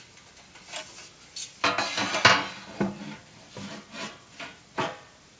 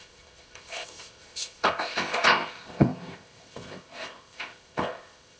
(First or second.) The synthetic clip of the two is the second